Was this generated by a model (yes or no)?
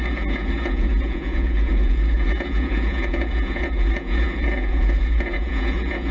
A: yes